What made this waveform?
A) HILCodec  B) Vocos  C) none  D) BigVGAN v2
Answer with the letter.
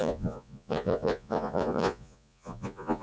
B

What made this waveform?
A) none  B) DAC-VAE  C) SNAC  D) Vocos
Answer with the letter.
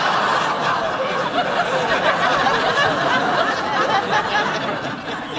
A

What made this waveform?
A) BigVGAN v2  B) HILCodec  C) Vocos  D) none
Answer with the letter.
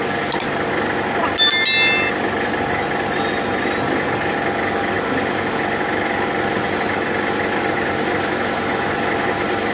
D